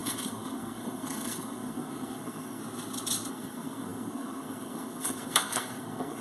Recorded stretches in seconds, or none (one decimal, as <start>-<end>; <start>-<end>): 2.6-3.3

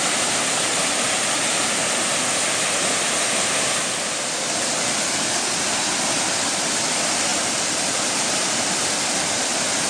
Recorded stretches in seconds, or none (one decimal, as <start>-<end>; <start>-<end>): 0.0-9.9